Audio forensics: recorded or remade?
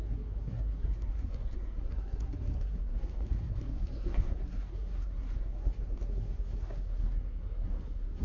remade